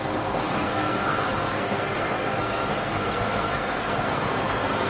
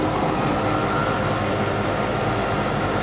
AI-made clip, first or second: first